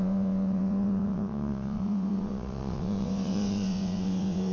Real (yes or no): no